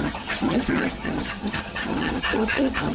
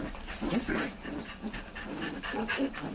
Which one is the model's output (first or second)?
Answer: first